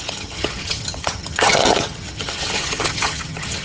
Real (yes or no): no